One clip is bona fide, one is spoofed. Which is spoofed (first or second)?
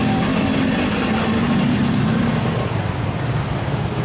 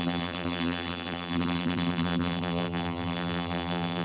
second